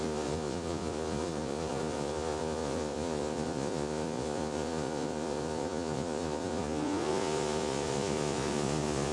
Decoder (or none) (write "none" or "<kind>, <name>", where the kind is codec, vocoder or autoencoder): vocoder, Vocos